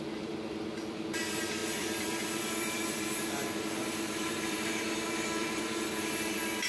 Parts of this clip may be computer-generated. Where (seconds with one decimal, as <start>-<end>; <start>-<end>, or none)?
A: 0.0-6.7